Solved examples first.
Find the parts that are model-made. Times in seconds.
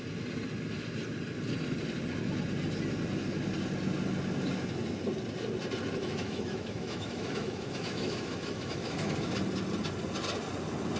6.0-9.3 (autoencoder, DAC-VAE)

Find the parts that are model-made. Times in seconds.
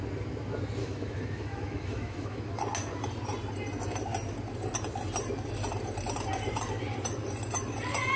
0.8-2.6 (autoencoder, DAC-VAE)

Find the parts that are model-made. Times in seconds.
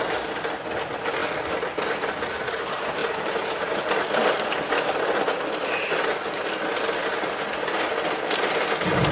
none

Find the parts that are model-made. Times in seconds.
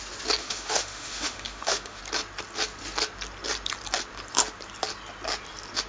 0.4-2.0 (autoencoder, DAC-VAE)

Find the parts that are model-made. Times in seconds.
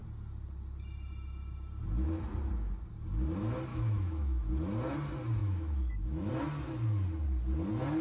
3.7-4.5 (autoencoder, DAC-VAE); 5.4-6.3